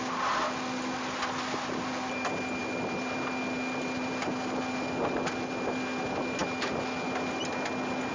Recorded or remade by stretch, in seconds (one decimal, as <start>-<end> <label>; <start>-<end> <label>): 0.0-8.1 recorded